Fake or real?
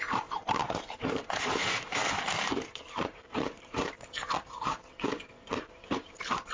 fake